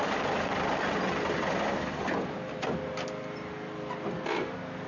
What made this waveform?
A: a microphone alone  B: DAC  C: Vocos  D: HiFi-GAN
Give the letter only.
A